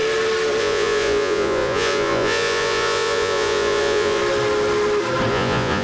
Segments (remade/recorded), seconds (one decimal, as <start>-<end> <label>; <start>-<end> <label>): 0.0-0.6 recorded; 0.6-4.2 remade; 4.2-5.3 recorded; 5.3-5.8 remade